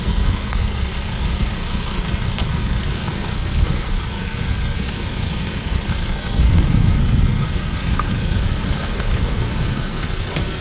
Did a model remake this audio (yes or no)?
yes